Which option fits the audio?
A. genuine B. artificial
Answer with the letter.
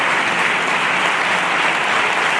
A